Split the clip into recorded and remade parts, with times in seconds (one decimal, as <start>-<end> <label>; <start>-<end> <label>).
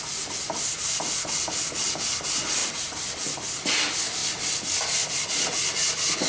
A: 0.0-2.6 recorded; 2.6-3.1 remade; 3.1-6.3 recorded